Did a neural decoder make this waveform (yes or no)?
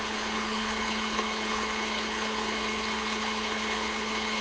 yes